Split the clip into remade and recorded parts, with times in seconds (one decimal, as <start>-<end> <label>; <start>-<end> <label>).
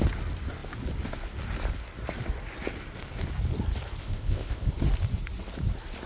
0.0-4.0 recorded; 4.0-4.7 remade; 4.7-6.1 recorded